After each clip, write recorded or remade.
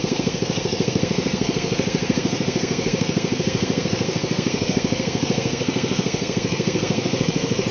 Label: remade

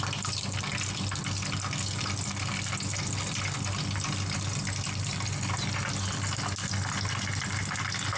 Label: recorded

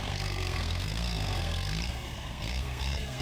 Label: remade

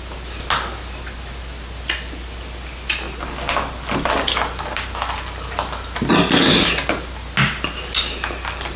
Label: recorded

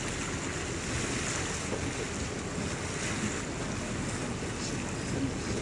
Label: recorded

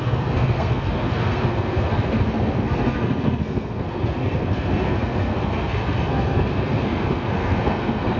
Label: remade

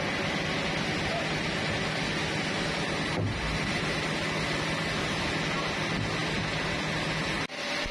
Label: recorded